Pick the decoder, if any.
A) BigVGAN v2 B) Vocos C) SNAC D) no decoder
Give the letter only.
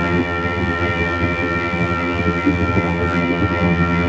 A